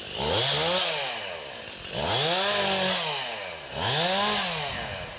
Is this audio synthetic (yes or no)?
no